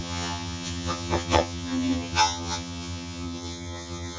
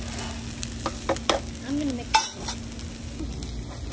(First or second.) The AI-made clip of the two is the first